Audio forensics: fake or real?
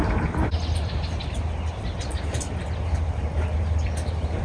real